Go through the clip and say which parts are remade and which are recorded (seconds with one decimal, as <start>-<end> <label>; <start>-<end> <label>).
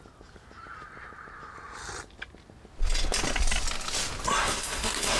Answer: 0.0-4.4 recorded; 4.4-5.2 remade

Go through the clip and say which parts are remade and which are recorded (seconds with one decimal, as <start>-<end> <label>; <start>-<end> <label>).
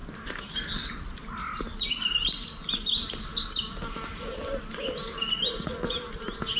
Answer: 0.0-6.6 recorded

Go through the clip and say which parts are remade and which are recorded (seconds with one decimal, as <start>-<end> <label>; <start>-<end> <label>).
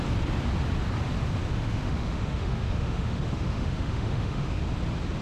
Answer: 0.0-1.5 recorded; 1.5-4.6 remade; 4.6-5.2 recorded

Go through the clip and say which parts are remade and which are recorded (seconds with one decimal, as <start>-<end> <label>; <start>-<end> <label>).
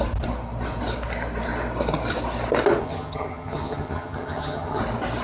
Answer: 0.0-2.8 recorded; 2.8-4.8 remade; 4.8-5.2 recorded